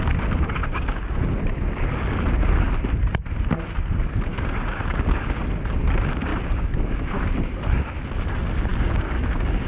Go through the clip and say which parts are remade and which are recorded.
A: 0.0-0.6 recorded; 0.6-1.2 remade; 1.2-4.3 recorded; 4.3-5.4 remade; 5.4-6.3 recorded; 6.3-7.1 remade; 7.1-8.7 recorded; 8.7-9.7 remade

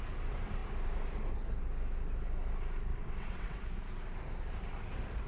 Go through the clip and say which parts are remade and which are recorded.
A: 0.0-2.9 recorded; 2.9-3.6 remade; 3.6-5.3 recorded